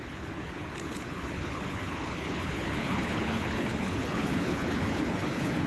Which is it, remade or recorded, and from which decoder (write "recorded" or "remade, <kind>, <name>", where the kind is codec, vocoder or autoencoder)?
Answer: remade, codec, HILCodec